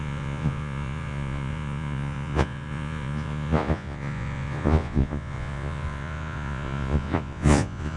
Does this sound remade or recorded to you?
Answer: remade